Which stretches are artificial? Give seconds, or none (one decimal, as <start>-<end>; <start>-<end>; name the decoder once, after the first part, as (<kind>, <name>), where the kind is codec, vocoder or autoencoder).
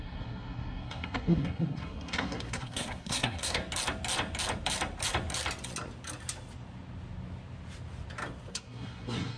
0.0-3.6 (codec, SNAC); 8.5-9.4